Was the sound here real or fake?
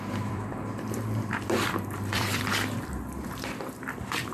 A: fake